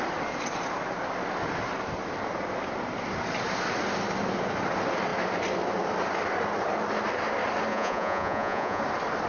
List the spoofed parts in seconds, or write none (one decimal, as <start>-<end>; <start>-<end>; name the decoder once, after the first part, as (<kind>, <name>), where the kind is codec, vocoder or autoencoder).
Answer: 7.7-8.8 (vocoder, Vocos)

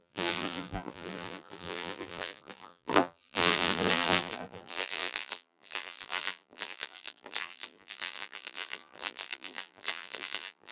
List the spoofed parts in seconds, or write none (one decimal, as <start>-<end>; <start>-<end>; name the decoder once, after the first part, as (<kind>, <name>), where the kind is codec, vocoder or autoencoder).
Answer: 0.0-10.7 (vocoder, BigVGAN v2)

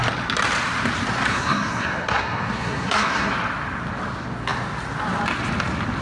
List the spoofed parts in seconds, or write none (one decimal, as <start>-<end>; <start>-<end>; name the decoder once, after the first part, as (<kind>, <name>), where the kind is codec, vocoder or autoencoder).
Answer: 1.3-3.3 (codec, SNAC)